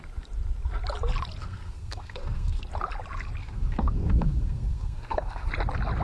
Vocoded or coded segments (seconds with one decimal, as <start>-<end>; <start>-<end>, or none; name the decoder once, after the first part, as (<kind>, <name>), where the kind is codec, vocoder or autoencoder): 1.4-2.6 (codec, SNAC); 3.4-5.5